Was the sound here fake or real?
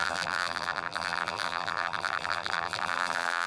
fake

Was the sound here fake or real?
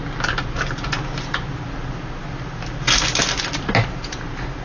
real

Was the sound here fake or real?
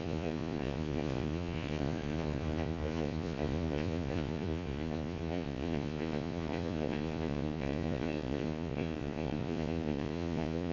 fake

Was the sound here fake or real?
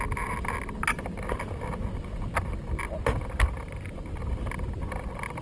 real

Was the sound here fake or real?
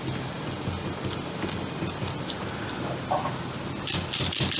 real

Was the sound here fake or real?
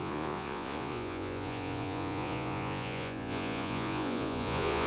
fake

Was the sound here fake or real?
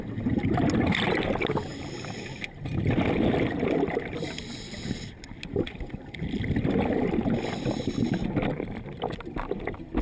real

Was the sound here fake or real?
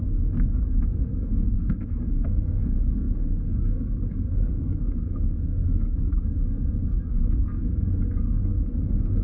fake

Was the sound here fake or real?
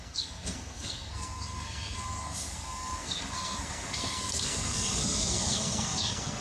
fake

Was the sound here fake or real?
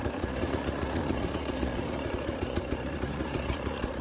fake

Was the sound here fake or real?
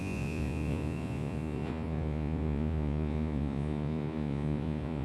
fake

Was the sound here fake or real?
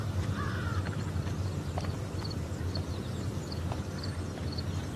fake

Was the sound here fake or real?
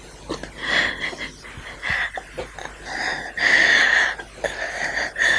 real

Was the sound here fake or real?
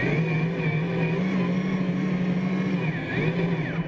real